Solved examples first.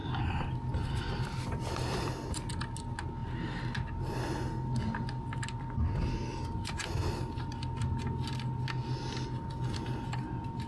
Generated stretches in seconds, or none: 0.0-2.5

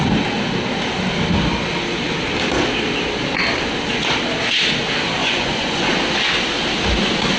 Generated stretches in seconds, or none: 5.2-5.9

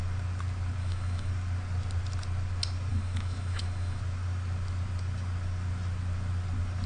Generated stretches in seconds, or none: 0.8-1.3; 2.9-4.0

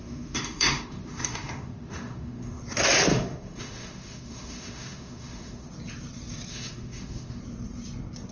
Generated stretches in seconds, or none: 0.0-2.6; 3.1-5.7; 6.5-7.4

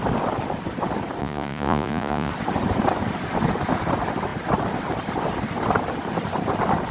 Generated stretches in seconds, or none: 1.2-2.3

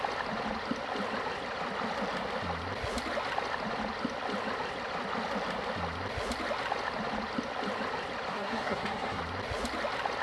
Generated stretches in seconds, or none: 8.3-9.2

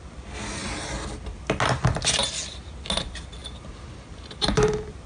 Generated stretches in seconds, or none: none